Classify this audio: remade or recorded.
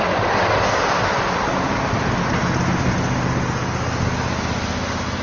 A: recorded